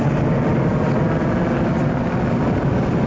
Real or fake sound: real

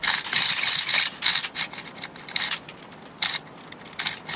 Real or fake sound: real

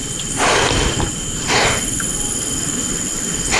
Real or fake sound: real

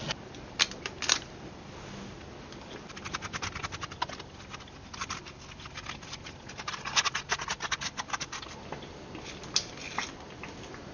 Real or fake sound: real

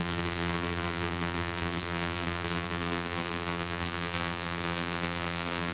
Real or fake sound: fake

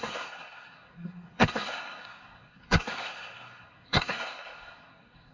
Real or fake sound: fake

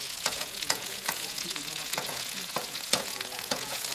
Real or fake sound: fake